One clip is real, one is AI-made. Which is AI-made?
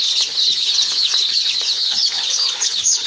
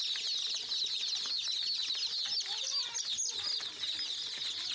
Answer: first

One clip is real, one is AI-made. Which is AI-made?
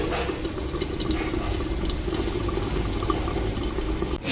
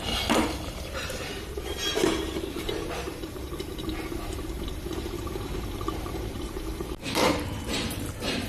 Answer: second